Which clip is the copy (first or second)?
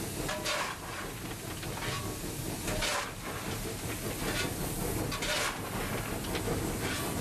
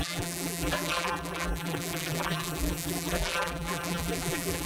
second